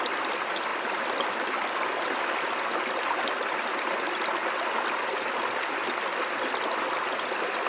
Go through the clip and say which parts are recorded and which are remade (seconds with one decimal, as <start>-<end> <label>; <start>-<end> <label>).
0.0-7.7 recorded